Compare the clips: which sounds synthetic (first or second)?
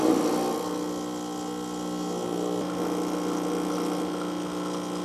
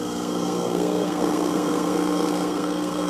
second